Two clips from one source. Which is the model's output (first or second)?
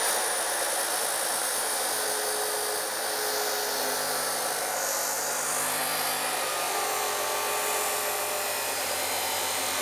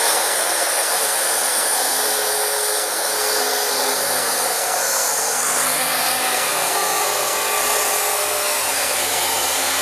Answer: second